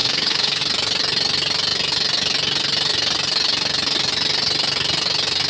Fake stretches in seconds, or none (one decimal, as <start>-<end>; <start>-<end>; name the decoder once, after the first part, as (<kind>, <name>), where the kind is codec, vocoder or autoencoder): 0.0-0.6 (codec, DAC)